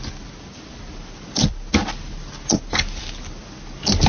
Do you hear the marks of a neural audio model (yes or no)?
no